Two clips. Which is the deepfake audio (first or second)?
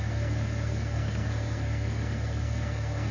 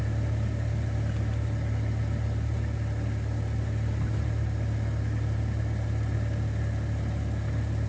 first